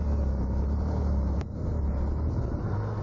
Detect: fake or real real